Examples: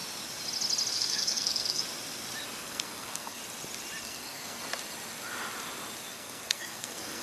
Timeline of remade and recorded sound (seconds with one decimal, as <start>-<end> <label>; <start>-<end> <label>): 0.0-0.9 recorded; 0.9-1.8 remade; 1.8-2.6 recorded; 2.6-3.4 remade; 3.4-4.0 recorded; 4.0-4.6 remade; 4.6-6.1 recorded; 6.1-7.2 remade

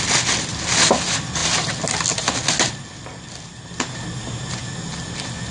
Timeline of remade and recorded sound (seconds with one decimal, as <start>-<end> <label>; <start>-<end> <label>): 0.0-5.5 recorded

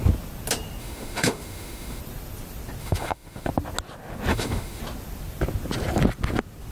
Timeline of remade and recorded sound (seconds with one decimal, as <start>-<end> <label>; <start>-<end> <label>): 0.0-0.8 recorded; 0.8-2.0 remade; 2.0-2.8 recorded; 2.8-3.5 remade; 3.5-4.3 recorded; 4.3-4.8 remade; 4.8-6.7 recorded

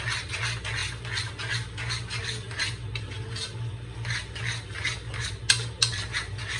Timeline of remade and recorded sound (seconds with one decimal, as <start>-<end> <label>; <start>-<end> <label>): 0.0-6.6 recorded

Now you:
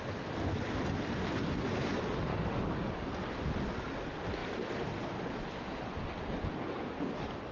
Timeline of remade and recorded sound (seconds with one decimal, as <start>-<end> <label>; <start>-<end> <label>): 0.0-2.3 recorded; 2.3-3.1 remade; 3.1-7.5 recorded

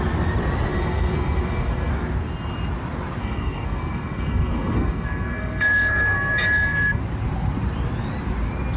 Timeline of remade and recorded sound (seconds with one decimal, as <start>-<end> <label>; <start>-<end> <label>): 0.0-0.7 recorded; 0.7-1.9 remade; 1.9-3.2 recorded; 3.2-7.0 remade; 7.0-8.8 recorded

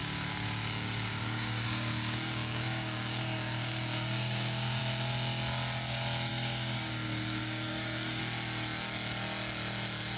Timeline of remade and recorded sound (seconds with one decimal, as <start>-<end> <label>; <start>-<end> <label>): 0.0-4.8 remade; 4.8-6.3 recorded; 6.3-8.2 remade; 8.2-10.2 recorded

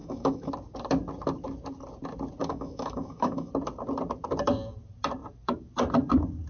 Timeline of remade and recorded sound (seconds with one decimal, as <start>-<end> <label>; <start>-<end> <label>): 0.0-0.5 remade; 0.5-2.4 recorded; 2.4-3.5 remade; 3.5-6.5 recorded